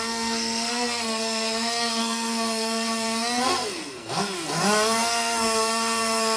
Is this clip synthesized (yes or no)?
yes